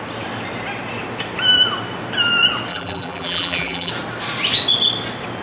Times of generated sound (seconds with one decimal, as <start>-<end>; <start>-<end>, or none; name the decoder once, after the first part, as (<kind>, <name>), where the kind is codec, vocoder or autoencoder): 2.7-3.9 (vocoder, BigVGAN v2)